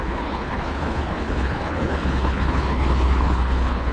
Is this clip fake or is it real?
fake